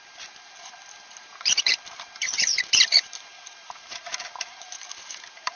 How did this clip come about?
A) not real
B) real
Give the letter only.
A